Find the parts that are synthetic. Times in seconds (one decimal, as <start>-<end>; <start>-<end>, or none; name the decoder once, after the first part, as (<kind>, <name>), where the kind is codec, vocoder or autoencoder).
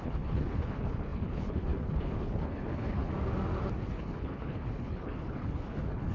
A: 0.0-3.1 (codec, HILCodec); 3.8-6.1